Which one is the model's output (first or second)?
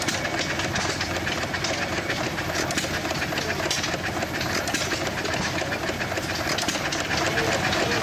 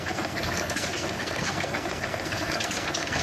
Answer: second